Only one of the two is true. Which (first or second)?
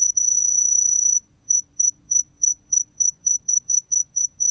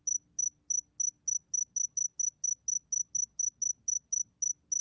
second